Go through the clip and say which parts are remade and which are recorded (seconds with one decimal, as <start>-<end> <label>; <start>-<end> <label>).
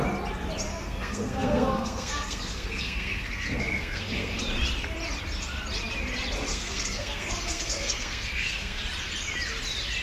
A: 0.0-0.7 recorded; 0.7-4.4 remade; 4.4-6.5 recorded; 6.5-8.8 remade; 8.8-10.0 recorded